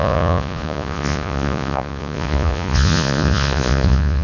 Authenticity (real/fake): fake